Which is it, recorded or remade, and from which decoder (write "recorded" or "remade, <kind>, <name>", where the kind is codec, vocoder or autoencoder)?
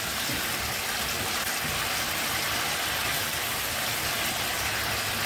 recorded